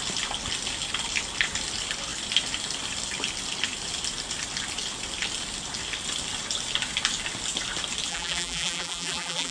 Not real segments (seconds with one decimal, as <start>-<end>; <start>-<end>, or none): 8.1-9.5